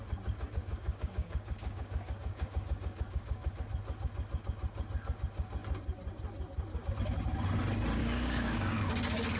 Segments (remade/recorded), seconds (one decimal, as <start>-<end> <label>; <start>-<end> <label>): 0.0-0.6 recorded; 0.6-3.5 remade; 3.5-8.0 recorded; 8.0-8.9 remade; 8.9-9.4 recorded